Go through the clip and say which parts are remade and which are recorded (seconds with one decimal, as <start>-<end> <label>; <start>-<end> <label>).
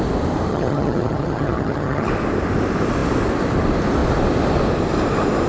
0.0-0.5 recorded; 0.5-2.1 remade; 2.1-5.5 recorded